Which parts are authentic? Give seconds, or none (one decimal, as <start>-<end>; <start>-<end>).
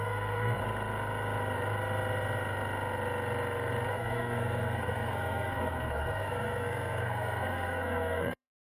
0.6-3.9